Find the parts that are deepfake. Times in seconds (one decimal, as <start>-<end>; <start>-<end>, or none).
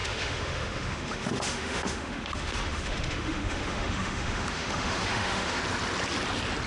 0.0-5.6